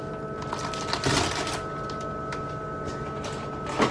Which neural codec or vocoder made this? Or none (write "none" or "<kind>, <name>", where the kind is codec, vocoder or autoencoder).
none